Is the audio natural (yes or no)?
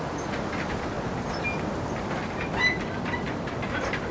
yes